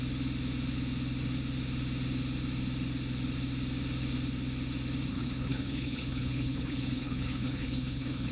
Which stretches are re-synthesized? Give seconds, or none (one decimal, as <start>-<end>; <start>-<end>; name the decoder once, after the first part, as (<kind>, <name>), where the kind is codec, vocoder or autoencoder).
5.1-8.3 (codec, HILCodec)